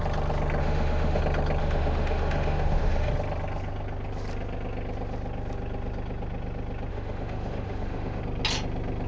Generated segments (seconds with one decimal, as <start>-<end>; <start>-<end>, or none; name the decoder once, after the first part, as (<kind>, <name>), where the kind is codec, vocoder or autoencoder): 0.6-1.2 (autoencoder, DAC-VAE); 1.6-3.1; 6.9-8.2